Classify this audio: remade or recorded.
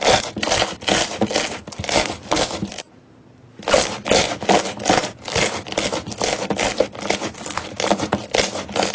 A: recorded